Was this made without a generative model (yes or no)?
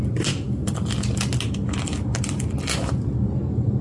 yes